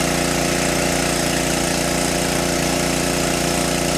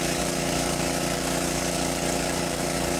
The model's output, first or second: second